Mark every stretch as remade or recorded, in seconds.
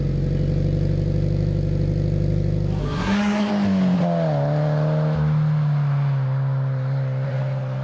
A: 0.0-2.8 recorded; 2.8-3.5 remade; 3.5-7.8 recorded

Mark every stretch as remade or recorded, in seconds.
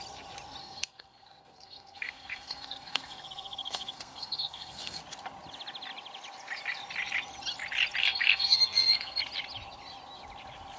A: 0.0-0.6 recorded; 0.6-5.0 remade; 5.0-8.0 recorded; 8.0-9.2 remade; 9.2-10.8 recorded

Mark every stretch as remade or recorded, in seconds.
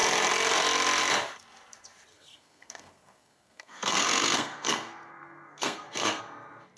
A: 0.0-2.1 recorded; 2.1-6.2 remade; 6.2-6.8 recorded